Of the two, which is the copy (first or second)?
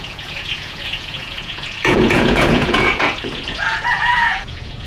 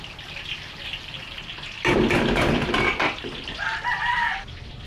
first